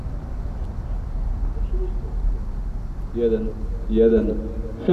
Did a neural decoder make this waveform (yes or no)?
no